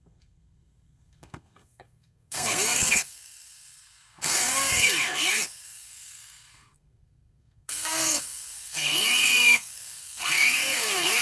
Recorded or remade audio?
remade